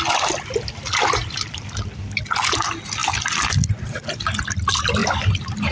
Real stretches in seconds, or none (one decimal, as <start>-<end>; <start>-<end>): 0.0-1.2; 2.2-3.0; 4.4-5.0